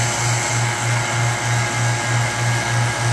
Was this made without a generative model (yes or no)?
yes